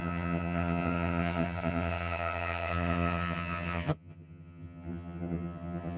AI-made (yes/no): yes